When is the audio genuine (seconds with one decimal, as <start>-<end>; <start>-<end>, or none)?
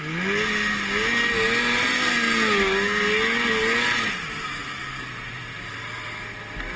0.0-6.8